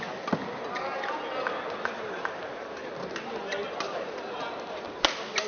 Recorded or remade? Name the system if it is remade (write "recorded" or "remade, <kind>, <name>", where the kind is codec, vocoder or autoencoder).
recorded